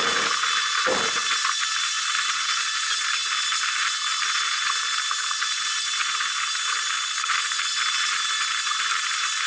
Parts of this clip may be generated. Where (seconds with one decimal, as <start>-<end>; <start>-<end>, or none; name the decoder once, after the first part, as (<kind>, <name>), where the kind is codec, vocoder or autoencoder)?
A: none